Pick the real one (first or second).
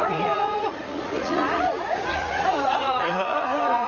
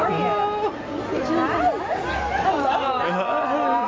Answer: second